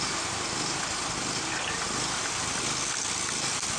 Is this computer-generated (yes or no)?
no